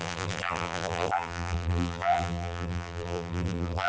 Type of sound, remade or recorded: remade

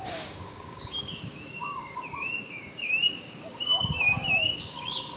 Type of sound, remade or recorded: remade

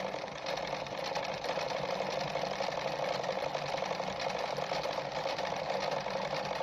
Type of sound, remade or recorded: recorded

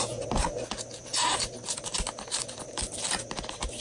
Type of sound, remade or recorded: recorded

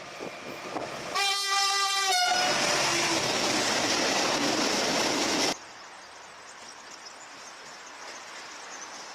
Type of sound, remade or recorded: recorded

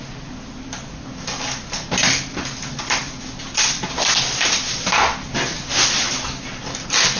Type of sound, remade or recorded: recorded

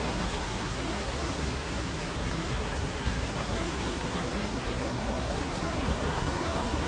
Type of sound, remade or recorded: remade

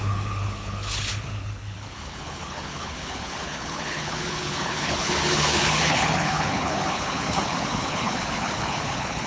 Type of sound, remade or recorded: remade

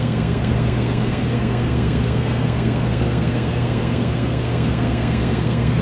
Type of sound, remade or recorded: remade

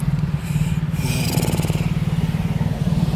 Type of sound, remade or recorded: recorded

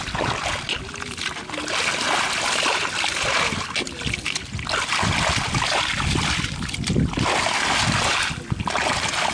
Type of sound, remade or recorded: recorded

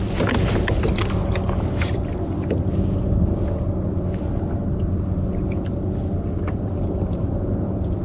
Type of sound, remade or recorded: recorded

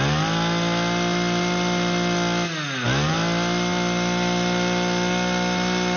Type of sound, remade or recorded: recorded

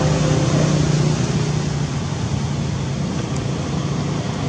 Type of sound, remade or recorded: recorded